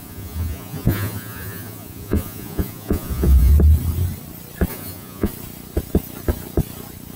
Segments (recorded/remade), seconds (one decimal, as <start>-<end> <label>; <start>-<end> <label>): 0.0-3.5 remade; 3.5-4.7 recorded; 4.7-5.3 remade; 5.3-7.2 recorded